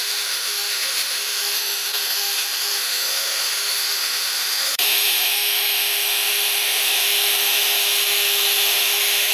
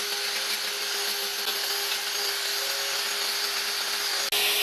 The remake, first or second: first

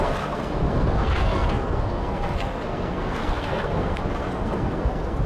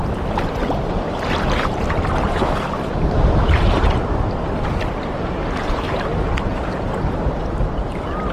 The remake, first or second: first